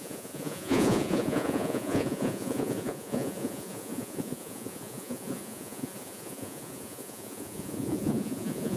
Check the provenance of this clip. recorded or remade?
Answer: remade